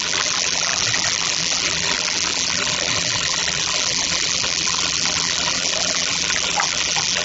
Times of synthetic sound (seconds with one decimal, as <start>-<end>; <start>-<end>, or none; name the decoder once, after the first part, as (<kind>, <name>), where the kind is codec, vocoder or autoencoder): 0.0-7.2 (vocoder, BigVGAN v2)